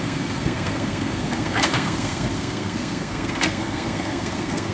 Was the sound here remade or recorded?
remade